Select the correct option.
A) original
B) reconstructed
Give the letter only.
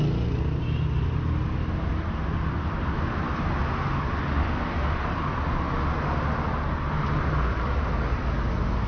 A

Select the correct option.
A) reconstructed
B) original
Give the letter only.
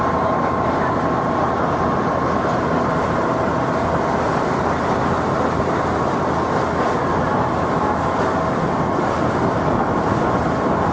B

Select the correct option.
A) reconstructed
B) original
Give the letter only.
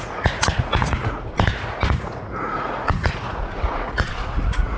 A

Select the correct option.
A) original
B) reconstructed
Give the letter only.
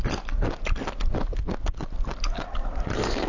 A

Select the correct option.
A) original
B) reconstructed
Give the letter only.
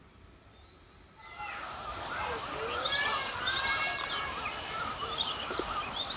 A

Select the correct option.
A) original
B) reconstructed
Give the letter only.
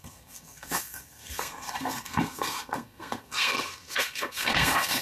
B